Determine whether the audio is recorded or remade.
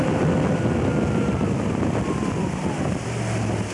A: recorded